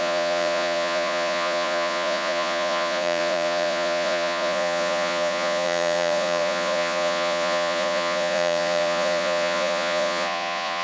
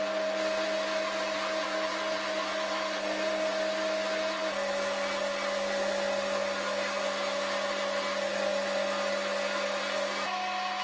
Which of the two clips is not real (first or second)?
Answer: first